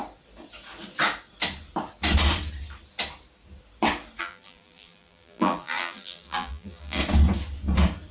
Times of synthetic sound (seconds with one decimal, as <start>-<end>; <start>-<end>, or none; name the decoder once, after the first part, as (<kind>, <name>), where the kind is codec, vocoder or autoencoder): 4.2-7.0 (vocoder, BigVGAN v2)